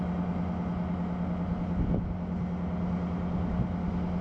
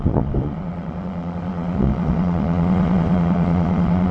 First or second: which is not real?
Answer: second